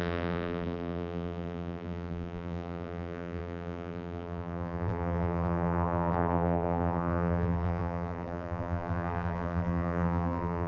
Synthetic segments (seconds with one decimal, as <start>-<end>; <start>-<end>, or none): 0.0-10.7